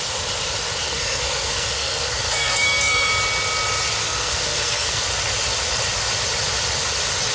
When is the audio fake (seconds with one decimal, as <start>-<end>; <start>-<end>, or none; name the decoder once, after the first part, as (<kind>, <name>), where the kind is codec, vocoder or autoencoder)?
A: 0.8-3.1 (codec, SNAC); 4.0-5.0